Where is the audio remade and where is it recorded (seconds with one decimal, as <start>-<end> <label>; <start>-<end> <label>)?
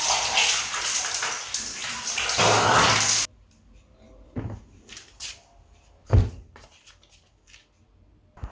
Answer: 0.0-6.1 recorded; 6.1-6.9 remade; 6.9-8.5 recorded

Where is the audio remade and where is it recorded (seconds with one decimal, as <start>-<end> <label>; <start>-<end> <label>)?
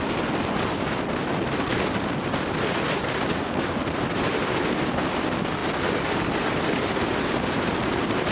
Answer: 0.0-5.6 recorded; 5.6-7.8 remade; 7.8-8.3 recorded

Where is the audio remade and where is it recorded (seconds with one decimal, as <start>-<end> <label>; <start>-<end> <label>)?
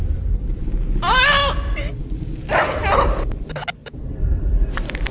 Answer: 0.0-0.6 remade; 0.6-3.8 recorded; 3.8-5.1 remade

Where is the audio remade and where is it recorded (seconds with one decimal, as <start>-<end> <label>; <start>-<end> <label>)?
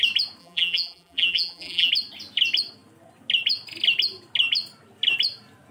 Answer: 0.0-0.4 recorded; 0.4-1.9 remade; 1.9-5.7 recorded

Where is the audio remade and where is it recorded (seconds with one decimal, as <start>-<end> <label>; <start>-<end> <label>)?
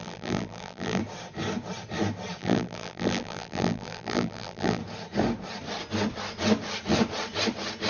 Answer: 0.0-1.0 remade; 1.0-2.4 recorded; 2.4-4.8 remade; 4.8-7.9 recorded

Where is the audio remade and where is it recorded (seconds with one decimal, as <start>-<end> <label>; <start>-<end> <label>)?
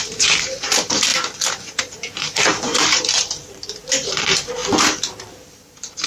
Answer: 0.0-4.6 remade; 4.6-5.3 recorded; 5.3-6.1 remade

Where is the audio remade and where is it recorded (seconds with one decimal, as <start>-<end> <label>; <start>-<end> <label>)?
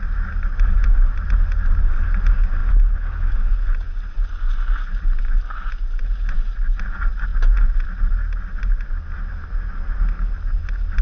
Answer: 0.0-11.0 recorded